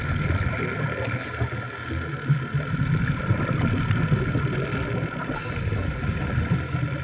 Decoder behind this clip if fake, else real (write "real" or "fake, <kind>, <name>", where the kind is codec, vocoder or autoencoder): real